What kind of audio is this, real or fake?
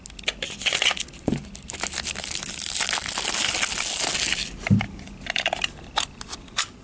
real